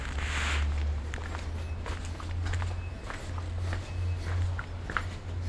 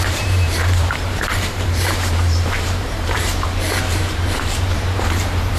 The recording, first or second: first